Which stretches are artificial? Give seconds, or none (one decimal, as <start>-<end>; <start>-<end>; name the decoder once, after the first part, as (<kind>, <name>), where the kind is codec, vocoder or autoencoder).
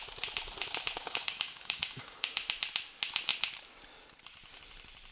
1.0-2.3 (codec, DAC)